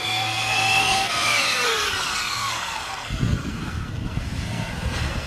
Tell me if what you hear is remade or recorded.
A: remade